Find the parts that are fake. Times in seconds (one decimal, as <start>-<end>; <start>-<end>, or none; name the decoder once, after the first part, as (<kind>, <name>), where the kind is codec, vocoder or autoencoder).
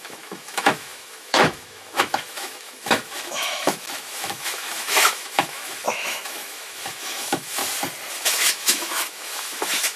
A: 0.0-7.6 (autoencoder, DAC-VAE); 8.1-10.0